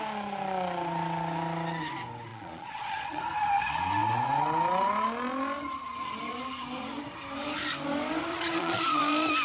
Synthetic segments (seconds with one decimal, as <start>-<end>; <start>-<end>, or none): 2.3-3.2; 8.3-9.0